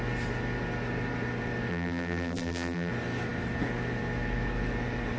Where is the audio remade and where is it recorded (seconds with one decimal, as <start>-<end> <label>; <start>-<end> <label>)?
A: 0.0-1.7 recorded; 1.7-2.9 remade; 2.9-5.2 recorded